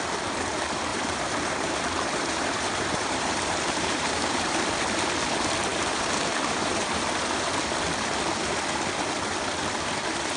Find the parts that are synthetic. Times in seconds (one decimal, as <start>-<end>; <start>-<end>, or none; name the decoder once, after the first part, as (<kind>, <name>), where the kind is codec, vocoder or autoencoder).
0.9-4.5 (vocoder, BigVGAN v2); 5.7-7.0

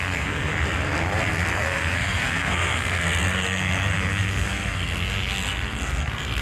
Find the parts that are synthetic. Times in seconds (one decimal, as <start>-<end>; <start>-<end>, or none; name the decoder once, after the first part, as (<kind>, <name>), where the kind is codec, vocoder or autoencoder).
0.0-0.5 (codec, SNAC); 1.5-6.4

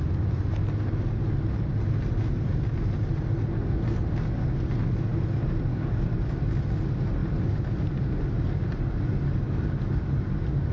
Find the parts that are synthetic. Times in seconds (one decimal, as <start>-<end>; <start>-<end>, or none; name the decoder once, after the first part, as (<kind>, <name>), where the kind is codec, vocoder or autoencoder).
none

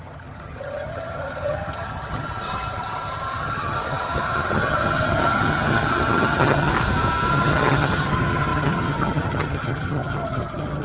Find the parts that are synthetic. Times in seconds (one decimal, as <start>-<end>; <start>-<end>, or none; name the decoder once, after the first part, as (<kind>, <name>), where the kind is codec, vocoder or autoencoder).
0.0-6.7 (vocoder, HiFi-GAN); 7.3-10.8